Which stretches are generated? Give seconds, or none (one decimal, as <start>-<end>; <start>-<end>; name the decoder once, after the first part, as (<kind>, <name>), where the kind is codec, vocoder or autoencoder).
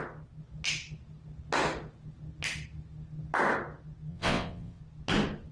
4.1-4.8 (vocoder, WaveNeXt)